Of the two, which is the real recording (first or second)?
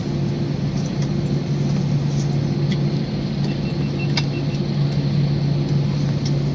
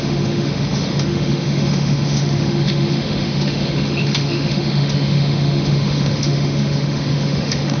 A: first